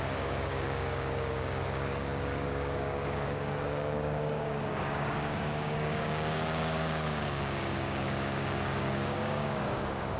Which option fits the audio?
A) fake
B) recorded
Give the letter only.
A